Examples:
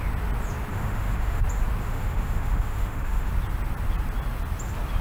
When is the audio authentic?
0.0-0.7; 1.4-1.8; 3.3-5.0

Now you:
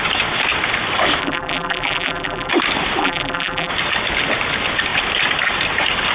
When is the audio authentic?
0.0-1.2; 2.5-3.0; 3.7-6.1

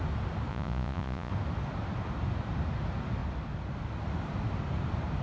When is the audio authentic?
0.0-0.5; 1.3-5.2

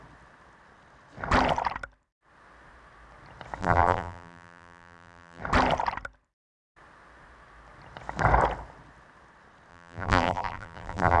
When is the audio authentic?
0.0-3.6; 5.4-9.7

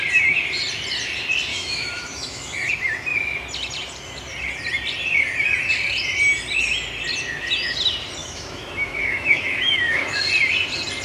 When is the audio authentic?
0.0-1.5; 2.7-8.2; 10.3-11.0

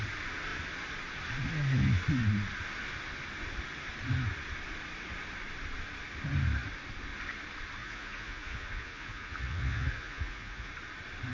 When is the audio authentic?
0.0-7.8; 10.7-11.3

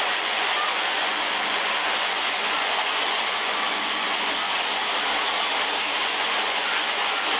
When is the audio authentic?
4.8-6.0

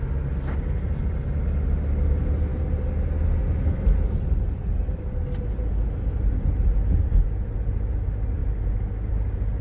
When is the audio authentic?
0.0-9.6